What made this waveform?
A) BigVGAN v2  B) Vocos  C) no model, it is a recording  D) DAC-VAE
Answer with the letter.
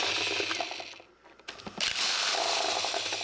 C